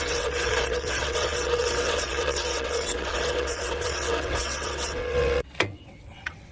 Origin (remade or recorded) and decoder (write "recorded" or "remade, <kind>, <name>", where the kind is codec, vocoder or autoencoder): remade, vocoder, WaveNeXt